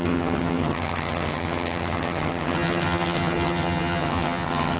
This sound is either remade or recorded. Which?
remade